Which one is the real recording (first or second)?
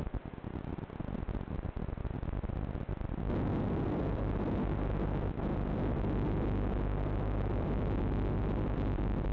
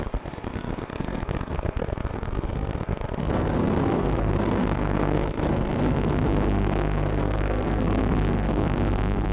first